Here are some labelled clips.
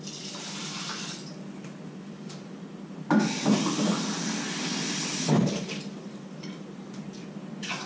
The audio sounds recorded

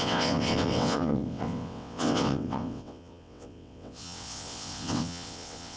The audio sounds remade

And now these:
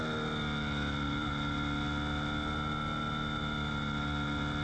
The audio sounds recorded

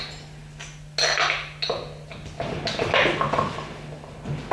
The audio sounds recorded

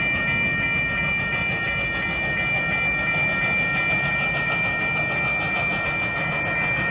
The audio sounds recorded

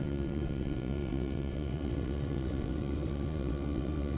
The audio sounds remade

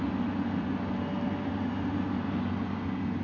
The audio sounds recorded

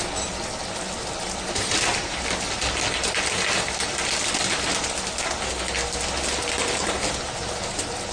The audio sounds recorded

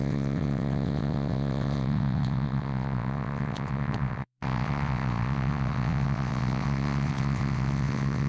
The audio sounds remade